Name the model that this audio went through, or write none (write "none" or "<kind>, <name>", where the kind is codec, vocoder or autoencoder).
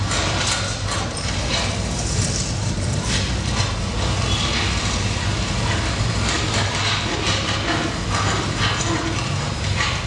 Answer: none